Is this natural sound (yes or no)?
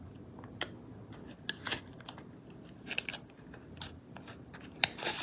yes